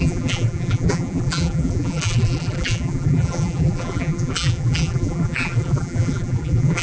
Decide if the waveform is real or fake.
fake